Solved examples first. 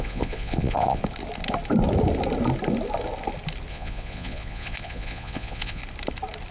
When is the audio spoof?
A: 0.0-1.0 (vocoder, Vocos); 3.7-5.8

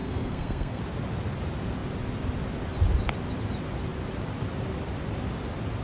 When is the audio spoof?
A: 0.0-0.8 (codec, SNAC)

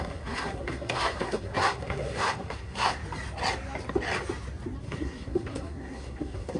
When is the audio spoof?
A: 0.0-3.0 (codec, SNAC); 4.8-6.6

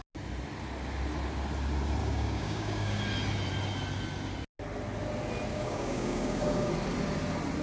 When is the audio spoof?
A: 2.0-3.0 (codec, DAC); 5.5-6.7

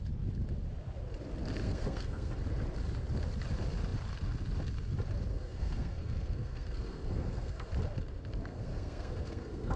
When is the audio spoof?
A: 1.6-2.3 (codec, SNAC); 5.3-7.7; 8.5-9.8

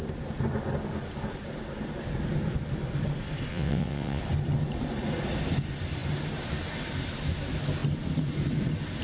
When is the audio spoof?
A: 3.5-4.2 (vocoder, WaveNeXt)